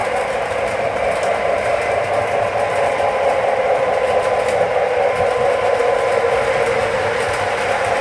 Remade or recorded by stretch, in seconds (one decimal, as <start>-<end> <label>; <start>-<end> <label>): 0.0-8.0 recorded